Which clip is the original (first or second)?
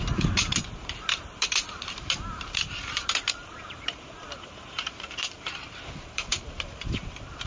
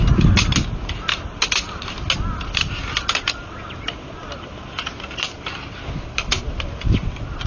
second